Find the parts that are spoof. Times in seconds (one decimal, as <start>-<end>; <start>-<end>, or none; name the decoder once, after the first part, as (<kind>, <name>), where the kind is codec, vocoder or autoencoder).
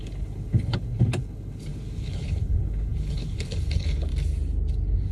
0.0-4.1 (codec, HILCodec)